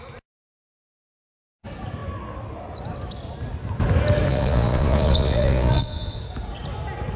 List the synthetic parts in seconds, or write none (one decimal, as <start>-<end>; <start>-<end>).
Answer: 4.3-6.2